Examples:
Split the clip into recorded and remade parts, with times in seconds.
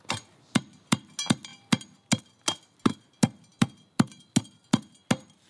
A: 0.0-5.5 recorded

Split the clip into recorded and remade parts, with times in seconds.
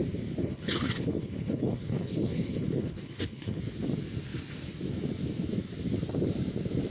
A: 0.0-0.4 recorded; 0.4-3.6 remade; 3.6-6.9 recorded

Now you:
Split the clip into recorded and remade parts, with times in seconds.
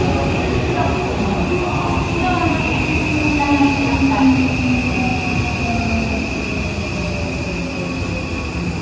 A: 0.0-8.8 recorded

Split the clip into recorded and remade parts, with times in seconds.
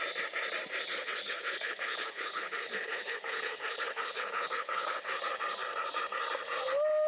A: 0.0-0.9 recorded; 0.9-5.2 remade; 5.2-7.1 recorded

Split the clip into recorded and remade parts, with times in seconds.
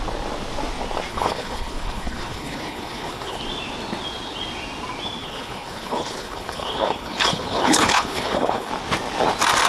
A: 0.0-1.1 recorded; 1.1-3.4 remade; 3.4-5.2 recorded; 5.2-8.7 remade; 8.7-9.7 recorded